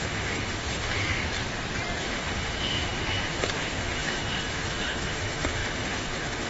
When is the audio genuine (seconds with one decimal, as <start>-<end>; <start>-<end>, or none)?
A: 1.1-2.0

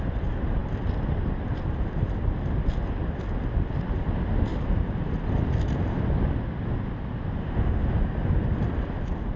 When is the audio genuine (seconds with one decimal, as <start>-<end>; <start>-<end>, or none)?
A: 0.0-7.4; 7.9-9.4

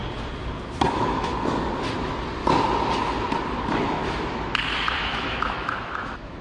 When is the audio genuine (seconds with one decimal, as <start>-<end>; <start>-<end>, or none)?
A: 0.0-0.9; 1.3-3.6; 4.0-5.0